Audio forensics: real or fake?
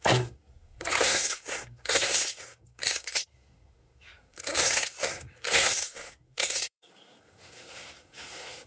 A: fake